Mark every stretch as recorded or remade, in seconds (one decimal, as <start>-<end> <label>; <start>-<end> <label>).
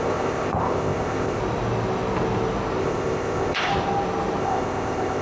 0.0-1.4 remade; 1.4-2.8 recorded; 2.8-3.7 remade; 3.7-4.4 recorded; 4.4-5.2 remade